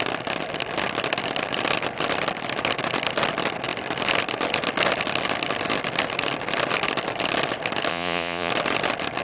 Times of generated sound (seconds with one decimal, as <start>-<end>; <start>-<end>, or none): 7.9-8.5